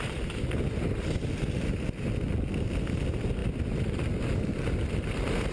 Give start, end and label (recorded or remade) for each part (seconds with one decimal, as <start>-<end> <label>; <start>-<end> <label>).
0.0-5.5 recorded